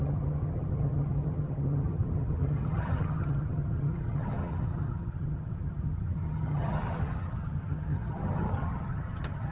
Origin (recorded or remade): remade